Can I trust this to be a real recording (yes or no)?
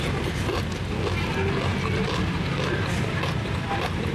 yes